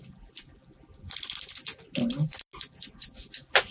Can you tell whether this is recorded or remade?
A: recorded